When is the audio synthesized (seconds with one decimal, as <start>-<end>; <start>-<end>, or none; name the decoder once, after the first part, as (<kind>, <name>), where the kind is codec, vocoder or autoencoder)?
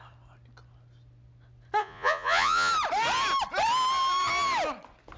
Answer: 1.8-2.7 (vocoder, Vocos)